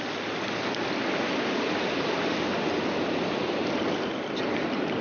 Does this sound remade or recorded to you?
recorded